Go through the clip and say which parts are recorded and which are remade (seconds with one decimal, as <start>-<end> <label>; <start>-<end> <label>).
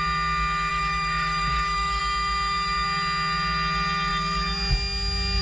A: 0.0-0.7 recorded; 0.7-2.0 remade; 2.0-5.4 recorded